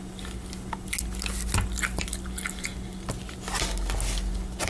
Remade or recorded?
recorded